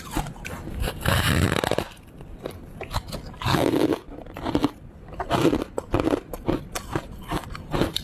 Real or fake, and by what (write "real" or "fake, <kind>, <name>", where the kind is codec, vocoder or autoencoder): fake, vocoder, BigVGAN v2